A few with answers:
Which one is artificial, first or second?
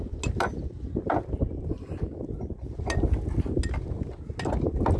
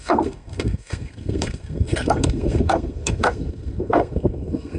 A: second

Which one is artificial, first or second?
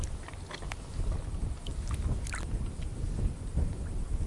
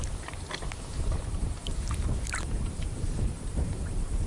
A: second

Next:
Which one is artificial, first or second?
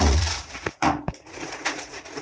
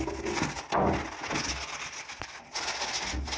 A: first